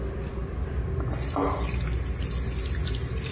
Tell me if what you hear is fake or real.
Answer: real